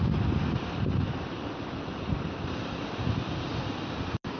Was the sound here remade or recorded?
recorded